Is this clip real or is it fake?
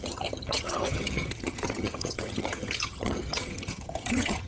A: fake